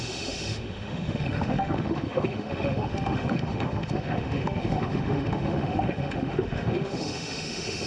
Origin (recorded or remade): remade